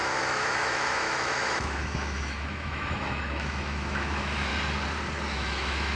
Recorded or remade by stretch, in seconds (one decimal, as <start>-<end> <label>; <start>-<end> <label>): 0.0-4.5 remade; 4.5-5.3 recorded; 5.3-6.0 remade